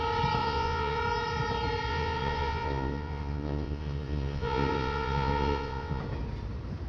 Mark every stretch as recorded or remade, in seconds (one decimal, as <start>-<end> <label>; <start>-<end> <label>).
0.0-0.4 recorded; 0.4-1.0 remade; 1.0-1.9 recorded; 1.9-6.0 remade; 6.0-6.9 recorded